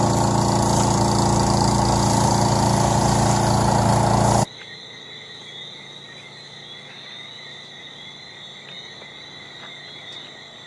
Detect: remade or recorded recorded